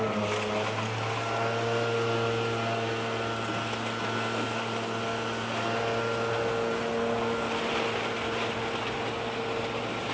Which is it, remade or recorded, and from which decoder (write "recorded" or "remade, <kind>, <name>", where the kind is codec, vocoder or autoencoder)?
recorded